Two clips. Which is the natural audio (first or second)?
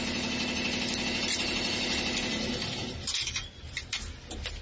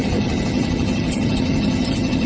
first